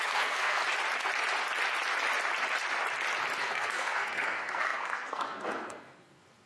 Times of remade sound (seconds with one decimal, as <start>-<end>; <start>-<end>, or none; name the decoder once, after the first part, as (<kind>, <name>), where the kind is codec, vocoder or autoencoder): 0.0-0.6 (codec, SNAC); 3.4-6.5